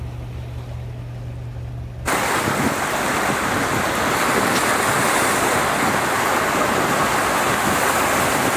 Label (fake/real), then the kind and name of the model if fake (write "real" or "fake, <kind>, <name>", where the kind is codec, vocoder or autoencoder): real